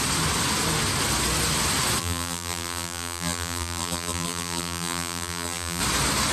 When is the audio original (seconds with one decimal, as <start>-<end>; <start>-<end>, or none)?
0.0-2.0; 5.8-6.3